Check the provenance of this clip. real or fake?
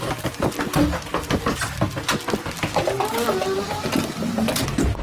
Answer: real